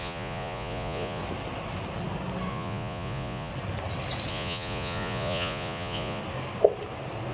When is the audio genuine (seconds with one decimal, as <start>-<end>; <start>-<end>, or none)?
1.2-2.5; 3.5-4.3; 6.2-7.3